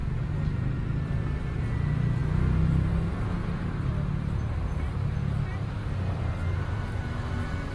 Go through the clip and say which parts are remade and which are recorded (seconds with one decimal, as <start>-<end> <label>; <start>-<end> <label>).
0.0-3.4 recorded; 3.4-3.9 remade; 3.9-5.5 recorded; 5.5-7.0 remade; 7.0-7.7 recorded